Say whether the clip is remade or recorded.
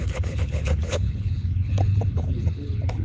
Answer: remade